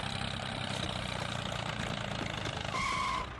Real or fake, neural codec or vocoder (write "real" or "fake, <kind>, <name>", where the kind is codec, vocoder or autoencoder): real